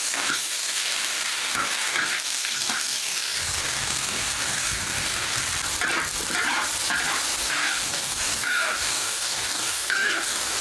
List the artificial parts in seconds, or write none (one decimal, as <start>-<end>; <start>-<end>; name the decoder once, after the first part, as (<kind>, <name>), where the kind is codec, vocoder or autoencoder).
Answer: 0.0-5.4 (codec, DAC); 7.4-10.6